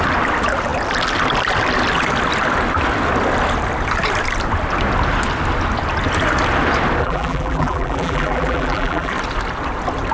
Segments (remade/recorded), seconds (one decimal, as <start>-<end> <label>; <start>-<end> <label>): 0.0-7.0 recorded; 7.0-9.1 remade; 9.1-10.1 recorded